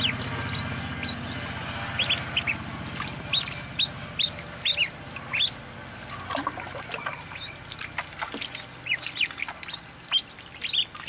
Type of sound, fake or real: real